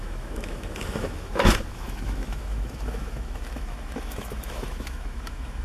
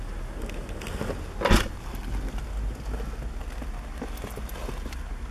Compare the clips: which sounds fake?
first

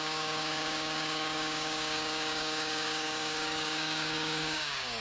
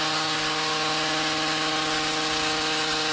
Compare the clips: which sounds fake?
first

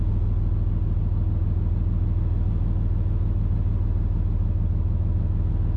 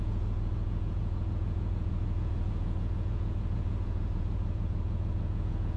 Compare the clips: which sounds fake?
second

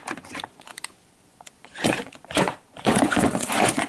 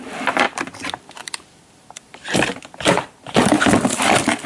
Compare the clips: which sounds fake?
first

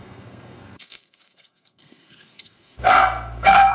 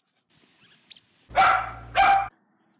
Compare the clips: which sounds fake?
first